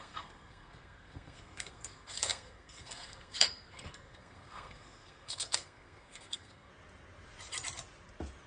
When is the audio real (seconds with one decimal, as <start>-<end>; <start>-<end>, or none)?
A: 6.7-8.5